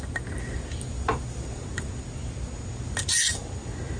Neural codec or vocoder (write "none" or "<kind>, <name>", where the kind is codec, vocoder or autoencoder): none